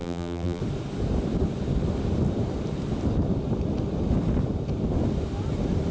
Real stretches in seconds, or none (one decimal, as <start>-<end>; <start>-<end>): 0.6-5.9